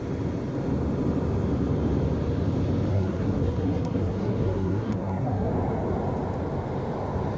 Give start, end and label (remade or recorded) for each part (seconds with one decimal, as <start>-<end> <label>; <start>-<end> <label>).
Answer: 0.0-2.9 recorded; 2.9-5.5 remade; 5.5-7.4 recorded